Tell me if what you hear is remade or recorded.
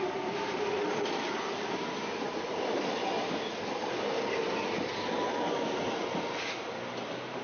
recorded